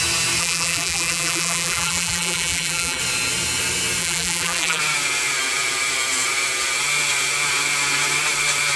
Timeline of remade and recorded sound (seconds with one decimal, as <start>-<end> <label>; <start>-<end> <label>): 0.0-0.4 recorded; 0.4-3.0 remade; 3.0-4.0 recorded; 4.0-4.8 remade; 4.8-8.8 recorded